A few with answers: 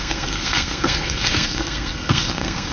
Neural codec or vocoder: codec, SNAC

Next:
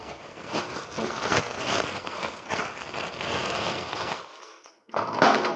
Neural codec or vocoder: codec, SNAC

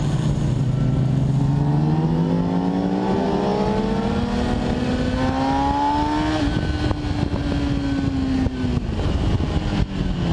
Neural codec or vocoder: none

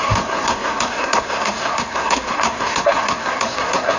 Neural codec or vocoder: codec, SNAC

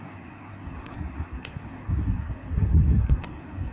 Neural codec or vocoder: codec, SNAC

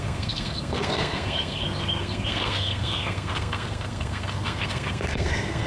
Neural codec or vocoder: codec, SNAC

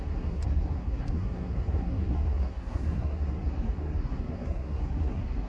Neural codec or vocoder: codec, SNAC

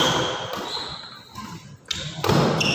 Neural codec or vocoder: none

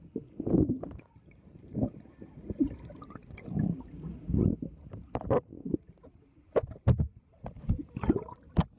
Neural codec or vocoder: none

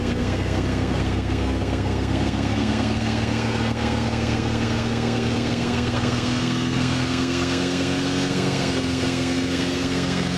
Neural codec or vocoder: codec, SNAC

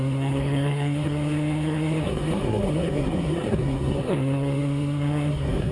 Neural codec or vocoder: codec, SNAC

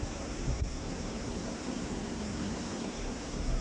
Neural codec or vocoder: codec, SNAC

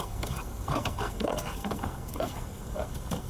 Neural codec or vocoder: codec, SNAC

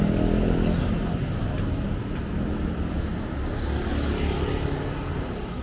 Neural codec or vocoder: none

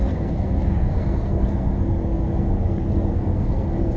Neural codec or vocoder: codec, SNAC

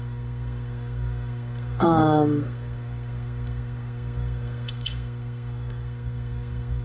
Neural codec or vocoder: codec, SNAC